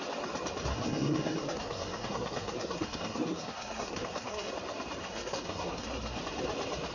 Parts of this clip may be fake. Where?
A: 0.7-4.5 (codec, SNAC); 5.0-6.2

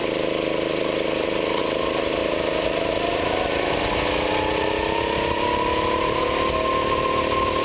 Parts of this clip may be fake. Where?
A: 0.0-1.6 (vocoder, BigVGAN v2)

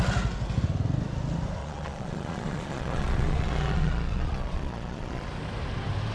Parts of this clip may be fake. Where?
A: 1.6-5.3 (vocoder, Vocos)

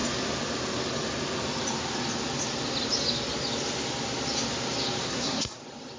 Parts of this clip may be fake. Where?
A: 5.0-5.6 (codec, SNAC)

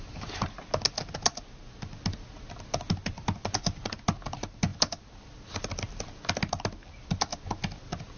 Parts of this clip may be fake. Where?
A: none

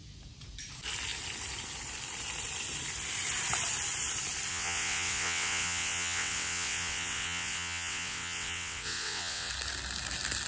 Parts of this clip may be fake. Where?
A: 4.5-9.5 (vocoder, WaveNeXt)